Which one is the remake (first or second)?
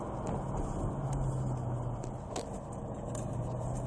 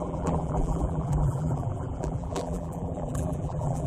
second